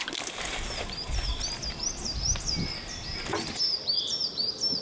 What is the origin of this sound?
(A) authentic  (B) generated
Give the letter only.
A